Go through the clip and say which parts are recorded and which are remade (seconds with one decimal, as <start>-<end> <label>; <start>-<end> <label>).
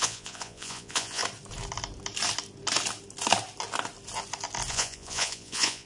0.0-1.2 remade; 1.2-4.7 recorded; 4.7-5.9 remade